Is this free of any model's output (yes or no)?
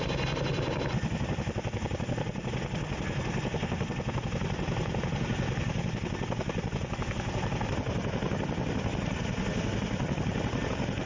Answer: yes